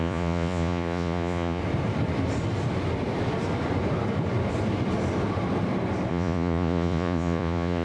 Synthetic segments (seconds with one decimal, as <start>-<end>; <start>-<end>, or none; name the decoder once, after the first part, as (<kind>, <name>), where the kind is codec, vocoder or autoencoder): 0.0-1.6 (vocoder, Vocos); 6.1-7.8